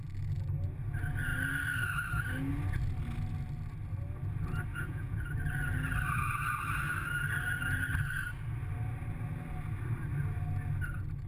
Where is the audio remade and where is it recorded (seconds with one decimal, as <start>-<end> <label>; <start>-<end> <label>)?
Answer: 0.0-4.7 recorded; 4.7-5.3 remade; 5.3-11.3 recorded